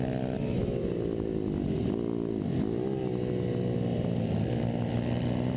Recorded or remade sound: recorded